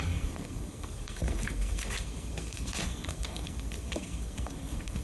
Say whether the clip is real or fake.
fake